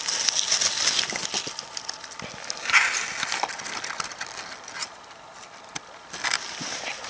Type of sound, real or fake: real